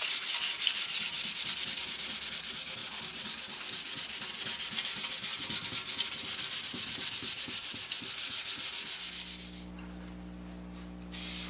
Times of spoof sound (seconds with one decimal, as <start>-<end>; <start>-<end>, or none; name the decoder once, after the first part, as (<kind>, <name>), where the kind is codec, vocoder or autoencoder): none